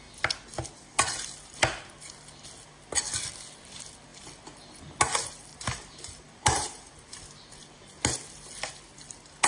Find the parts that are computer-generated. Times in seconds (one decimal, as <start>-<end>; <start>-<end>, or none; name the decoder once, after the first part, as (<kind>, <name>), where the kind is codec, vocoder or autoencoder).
5.5-7.2 (vocoder, BigVGAN v2)